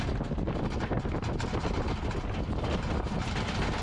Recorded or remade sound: recorded